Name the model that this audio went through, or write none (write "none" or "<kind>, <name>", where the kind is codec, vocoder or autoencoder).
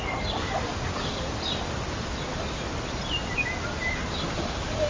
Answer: none